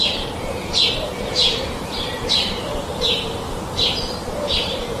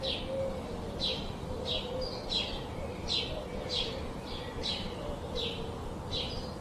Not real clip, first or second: first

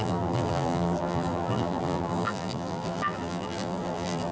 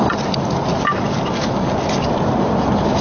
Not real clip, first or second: first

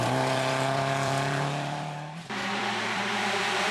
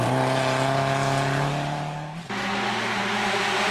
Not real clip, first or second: first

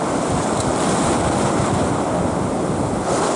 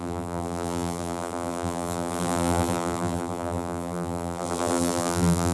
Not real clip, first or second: second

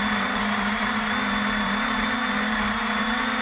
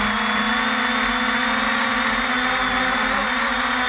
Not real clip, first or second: first